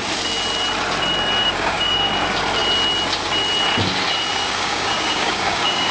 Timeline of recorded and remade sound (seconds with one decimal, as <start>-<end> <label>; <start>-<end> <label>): 0.0-1.4 recorded; 1.4-2.1 remade; 2.1-4.3 recorded; 4.3-5.9 remade